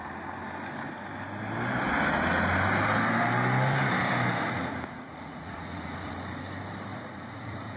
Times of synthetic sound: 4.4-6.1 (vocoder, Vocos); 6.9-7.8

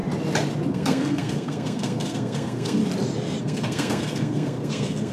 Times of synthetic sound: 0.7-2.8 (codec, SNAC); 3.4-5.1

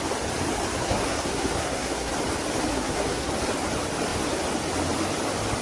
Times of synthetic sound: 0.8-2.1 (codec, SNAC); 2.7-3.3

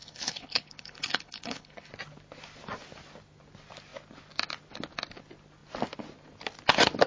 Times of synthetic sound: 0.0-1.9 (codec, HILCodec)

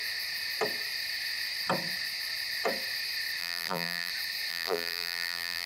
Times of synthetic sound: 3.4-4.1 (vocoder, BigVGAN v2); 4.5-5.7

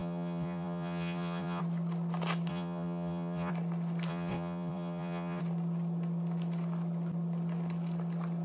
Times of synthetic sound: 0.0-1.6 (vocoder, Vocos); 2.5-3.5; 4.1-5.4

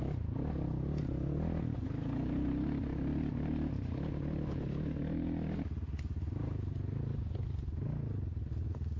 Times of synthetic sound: none

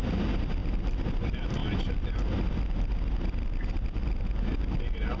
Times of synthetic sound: none